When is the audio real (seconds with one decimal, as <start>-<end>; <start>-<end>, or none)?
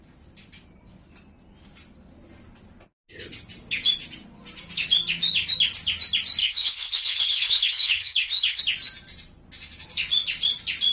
0.0-6.4; 8.6-10.9